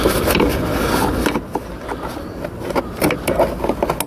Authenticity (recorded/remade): recorded